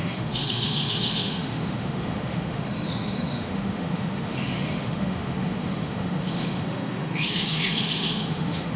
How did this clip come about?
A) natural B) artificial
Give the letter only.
B